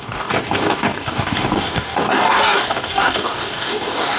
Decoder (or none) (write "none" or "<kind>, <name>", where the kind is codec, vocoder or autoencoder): codec, DAC